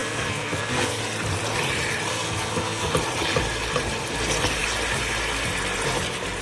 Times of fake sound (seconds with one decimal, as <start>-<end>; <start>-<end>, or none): 0.0-1.0; 2.1-2.9